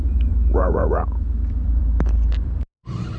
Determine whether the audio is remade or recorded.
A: remade